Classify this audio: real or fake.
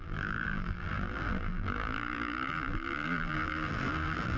fake